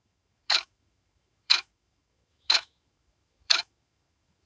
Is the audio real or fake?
fake